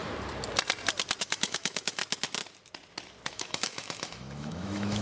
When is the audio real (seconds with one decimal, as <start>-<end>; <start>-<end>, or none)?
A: 0.0-1.2; 2.0-3.3